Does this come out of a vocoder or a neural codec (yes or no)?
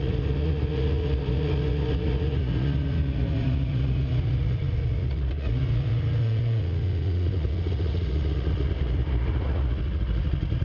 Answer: yes